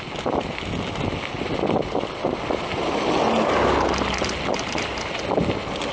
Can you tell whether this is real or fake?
real